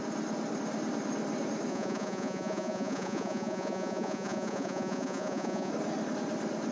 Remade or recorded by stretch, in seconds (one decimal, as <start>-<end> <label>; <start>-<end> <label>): 0.0-1.7 recorded; 1.7-5.7 remade; 5.7-6.7 recorded